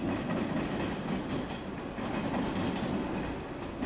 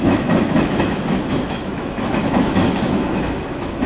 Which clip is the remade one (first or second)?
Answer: second